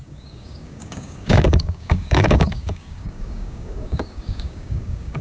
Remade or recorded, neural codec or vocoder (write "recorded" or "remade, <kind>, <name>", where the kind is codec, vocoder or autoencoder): remade, codec, DAC